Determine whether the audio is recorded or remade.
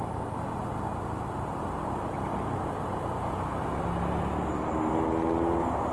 recorded